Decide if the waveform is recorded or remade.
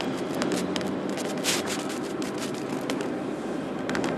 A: recorded